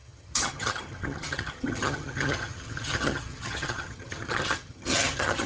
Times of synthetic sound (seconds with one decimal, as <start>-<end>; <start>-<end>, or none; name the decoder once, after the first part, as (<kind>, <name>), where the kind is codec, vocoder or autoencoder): 0.0-5.5 (vocoder, HiFi-GAN)